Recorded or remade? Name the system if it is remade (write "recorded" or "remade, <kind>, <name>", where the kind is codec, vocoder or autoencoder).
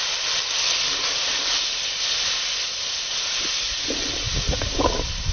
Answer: recorded